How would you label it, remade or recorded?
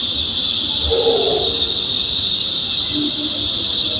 recorded